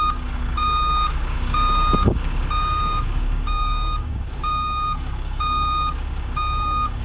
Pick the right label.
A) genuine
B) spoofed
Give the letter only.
B